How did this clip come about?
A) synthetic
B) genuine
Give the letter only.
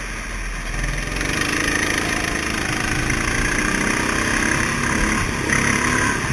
B